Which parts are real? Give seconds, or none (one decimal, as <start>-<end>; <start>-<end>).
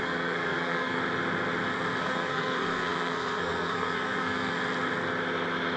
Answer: 1.0-2.0; 4.6-5.8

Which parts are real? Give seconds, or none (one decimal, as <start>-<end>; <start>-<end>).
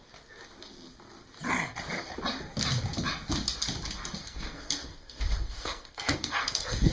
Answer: 0.0-4.2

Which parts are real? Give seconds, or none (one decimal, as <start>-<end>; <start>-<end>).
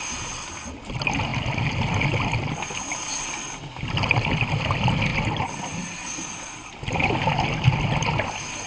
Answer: 0.0-8.7